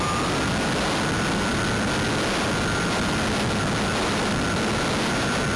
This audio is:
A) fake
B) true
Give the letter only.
B